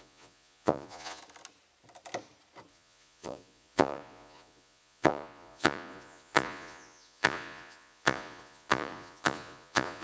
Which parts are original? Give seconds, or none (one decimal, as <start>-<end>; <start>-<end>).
1.2-2.7